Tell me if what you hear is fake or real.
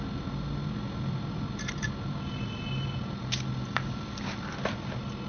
real